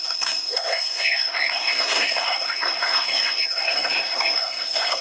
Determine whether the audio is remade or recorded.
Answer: remade